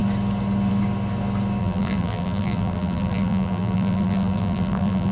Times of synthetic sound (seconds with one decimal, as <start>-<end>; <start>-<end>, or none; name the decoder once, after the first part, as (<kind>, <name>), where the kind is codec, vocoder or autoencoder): 1.6-5.1 (vocoder, BigVGAN v2)